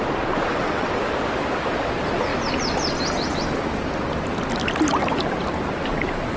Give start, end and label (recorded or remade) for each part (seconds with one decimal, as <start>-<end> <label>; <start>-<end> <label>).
0.0-0.5 recorded; 0.5-1.0 remade; 1.0-6.4 recorded